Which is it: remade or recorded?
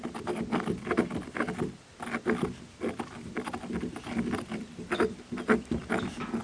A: recorded